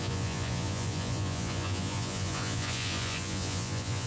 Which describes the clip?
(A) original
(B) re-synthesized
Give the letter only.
B